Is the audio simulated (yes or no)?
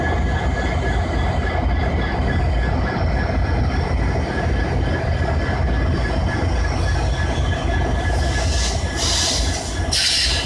no